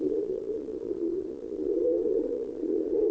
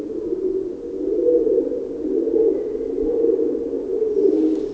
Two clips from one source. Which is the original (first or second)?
second